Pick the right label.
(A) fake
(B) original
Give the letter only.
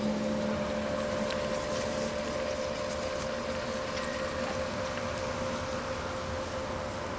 B